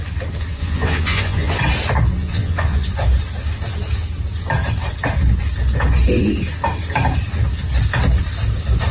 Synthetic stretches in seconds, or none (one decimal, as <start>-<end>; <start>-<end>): 0.6-1.6; 2.2-2.9